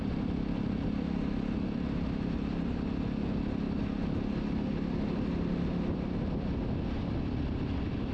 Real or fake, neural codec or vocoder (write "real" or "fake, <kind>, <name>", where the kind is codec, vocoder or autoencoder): real